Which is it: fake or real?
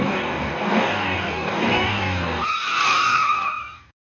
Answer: fake